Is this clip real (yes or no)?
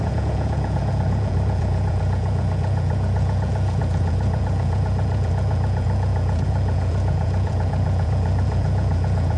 no